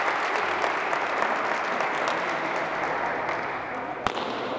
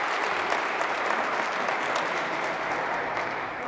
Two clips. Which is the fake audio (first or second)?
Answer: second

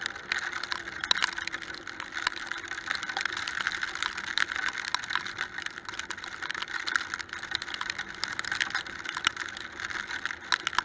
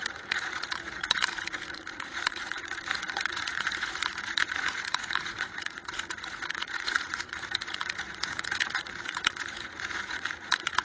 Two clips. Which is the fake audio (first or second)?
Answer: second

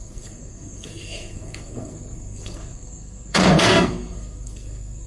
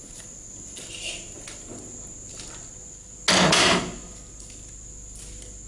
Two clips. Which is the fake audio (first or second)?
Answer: first